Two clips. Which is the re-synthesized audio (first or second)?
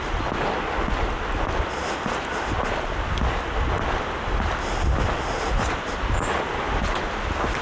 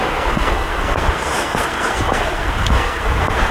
second